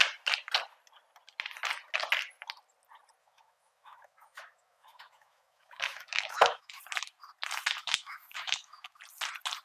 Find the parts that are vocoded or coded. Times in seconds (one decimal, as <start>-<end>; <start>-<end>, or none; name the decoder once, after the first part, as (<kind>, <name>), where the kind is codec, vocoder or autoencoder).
3.2-6.8 (autoencoder, DAC-VAE); 7.8-9.0

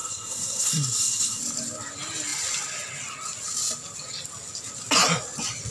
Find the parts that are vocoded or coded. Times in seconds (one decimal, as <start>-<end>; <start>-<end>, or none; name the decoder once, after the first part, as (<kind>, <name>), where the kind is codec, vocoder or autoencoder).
0.0-1.4 (codec, SNAC)

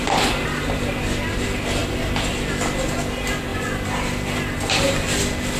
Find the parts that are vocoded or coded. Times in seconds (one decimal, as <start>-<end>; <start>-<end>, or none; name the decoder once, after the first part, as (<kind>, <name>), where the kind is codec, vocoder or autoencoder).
1.8-2.3 (vocoder, BigVGAN v2); 3.5-5.6

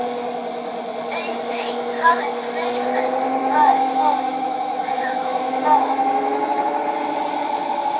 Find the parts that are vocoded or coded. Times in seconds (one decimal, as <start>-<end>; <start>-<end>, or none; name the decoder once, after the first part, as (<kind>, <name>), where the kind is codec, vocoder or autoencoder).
1.3-2.2 (autoencoder, DAC-VAE); 3.4-6.8

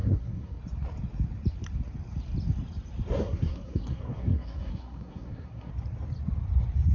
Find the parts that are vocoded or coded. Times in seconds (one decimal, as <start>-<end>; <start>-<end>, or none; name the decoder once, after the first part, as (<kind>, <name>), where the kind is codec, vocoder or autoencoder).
0.0-0.6 (codec, SNAC); 3.2-5.7